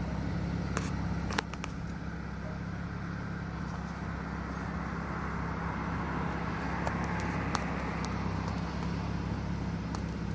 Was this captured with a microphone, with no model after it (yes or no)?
yes